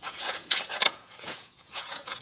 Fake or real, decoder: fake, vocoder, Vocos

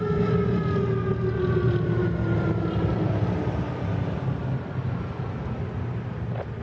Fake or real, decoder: real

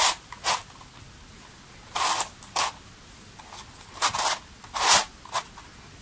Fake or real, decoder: real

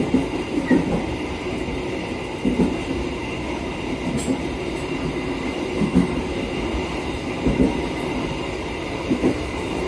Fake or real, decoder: real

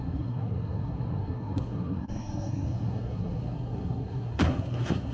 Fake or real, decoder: fake, codec, SNAC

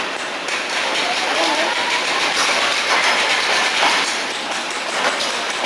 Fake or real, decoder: fake, vocoder, BigVGAN v2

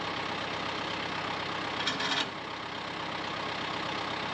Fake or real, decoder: real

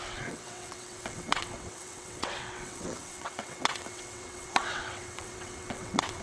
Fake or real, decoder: fake, vocoder, WaveNeXt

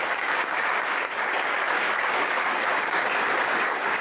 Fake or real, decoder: fake, codec, DAC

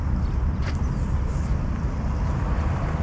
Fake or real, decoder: real